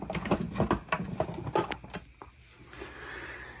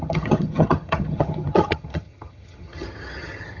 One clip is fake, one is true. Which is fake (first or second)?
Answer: second